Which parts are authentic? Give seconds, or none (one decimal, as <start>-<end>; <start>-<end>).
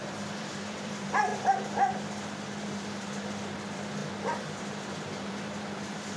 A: 1.3-2.6